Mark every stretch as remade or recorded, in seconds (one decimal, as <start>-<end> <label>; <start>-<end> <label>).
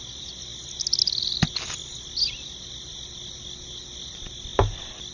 0.0-5.1 recorded